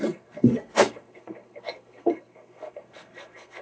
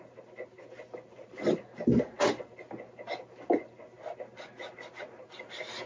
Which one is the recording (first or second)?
second